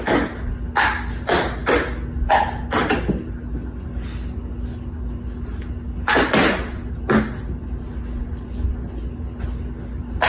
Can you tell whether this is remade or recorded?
recorded